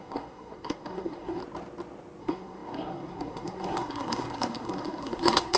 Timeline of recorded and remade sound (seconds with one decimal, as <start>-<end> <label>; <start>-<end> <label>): 0.0-1.4 remade; 1.4-2.2 recorded; 2.2-5.6 remade